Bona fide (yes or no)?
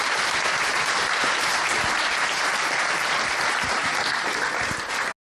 yes